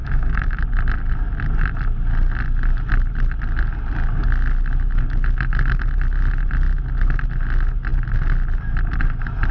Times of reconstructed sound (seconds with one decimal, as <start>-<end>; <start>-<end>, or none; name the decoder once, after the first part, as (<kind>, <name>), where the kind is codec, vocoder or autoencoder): 0.0-0.6 (autoencoder, DAC-VAE)